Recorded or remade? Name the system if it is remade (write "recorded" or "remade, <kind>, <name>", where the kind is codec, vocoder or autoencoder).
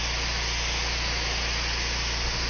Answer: recorded